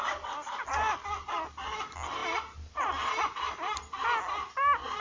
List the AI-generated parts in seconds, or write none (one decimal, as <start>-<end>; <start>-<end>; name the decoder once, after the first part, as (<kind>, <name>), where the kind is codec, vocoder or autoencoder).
none